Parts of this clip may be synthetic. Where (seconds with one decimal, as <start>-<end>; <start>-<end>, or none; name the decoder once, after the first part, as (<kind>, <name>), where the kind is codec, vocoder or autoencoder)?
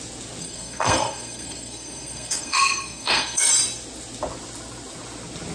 0.4-3.5 (codec, SNAC)